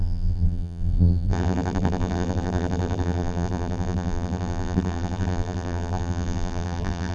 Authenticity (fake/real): fake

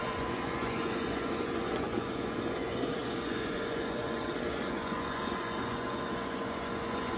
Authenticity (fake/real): fake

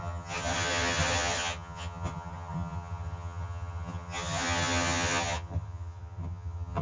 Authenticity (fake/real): fake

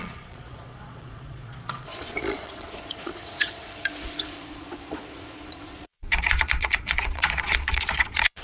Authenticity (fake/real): fake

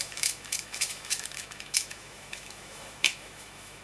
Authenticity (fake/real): fake